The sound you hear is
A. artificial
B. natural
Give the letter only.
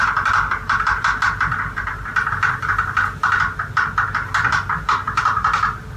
B